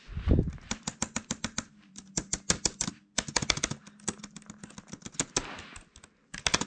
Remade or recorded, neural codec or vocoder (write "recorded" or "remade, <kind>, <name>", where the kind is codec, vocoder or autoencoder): recorded